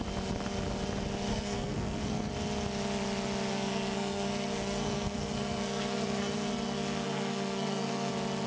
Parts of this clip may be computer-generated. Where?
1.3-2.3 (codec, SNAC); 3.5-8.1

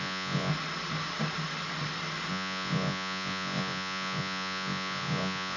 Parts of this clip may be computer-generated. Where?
0.0-0.5 (vocoder, Vocos); 2.3-5.6

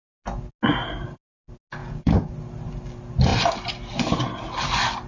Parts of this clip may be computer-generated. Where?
1.8-2.3 (vocoder, Vocos)

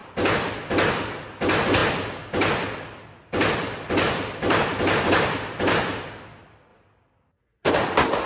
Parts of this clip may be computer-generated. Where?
none

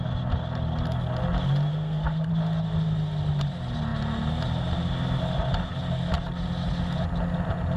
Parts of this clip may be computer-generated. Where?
1.7-2.3 (codec, SNAC)

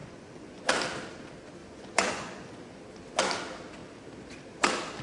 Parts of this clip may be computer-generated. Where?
0.0-0.6 (vocoder, Vocos); 1.6-2.8

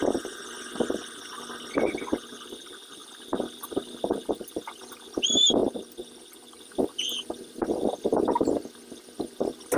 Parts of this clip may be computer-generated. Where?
none

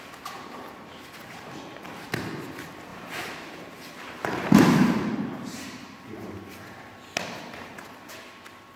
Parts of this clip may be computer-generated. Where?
2.9-6.4 (vocoder, BigVGAN v2)